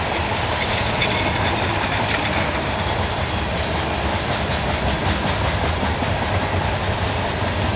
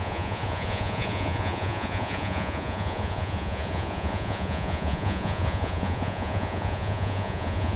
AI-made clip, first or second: second